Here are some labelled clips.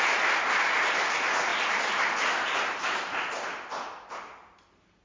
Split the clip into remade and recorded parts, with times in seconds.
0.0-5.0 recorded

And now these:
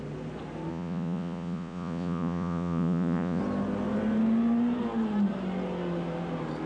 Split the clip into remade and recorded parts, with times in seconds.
0.0-0.7 recorded; 0.7-3.4 remade; 3.4-6.7 recorded

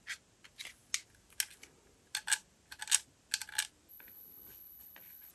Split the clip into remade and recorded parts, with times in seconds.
0.0-3.9 recorded; 3.9-5.3 remade

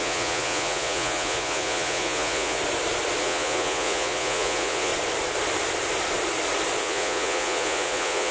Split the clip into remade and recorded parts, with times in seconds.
0.0-2.6 remade; 2.6-3.2 recorded; 3.2-4.9 remade; 4.9-6.8 recorded; 6.8-8.3 remade

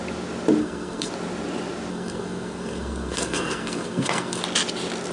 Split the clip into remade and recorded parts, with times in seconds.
0.0-0.6 recorded; 0.6-1.1 remade; 1.1-1.9 recorded; 1.9-4.4 remade; 4.4-5.1 recorded